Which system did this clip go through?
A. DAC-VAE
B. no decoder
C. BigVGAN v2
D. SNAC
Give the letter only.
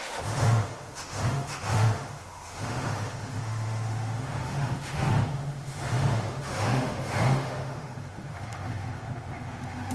A